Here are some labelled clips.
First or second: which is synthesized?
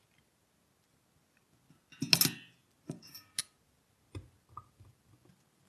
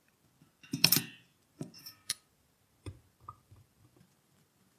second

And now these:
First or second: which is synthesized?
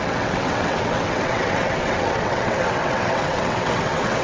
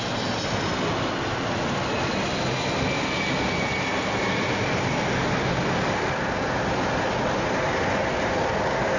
first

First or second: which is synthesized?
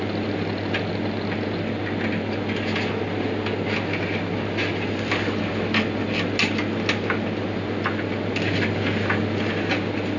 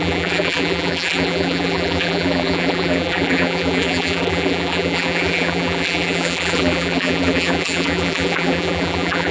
second